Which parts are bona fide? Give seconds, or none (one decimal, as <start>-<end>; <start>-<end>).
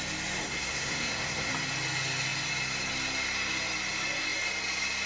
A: 0.0-0.4; 1.5-5.1